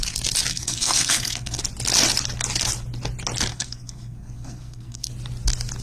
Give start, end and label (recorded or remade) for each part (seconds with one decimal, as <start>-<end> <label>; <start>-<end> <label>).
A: 0.0-0.5 recorded; 0.5-1.6 remade; 1.6-3.5 recorded; 3.5-5.1 remade; 5.1-5.8 recorded